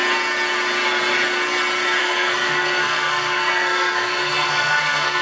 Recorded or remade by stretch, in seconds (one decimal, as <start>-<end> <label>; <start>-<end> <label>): 0.0-2.0 recorded; 2.0-5.2 remade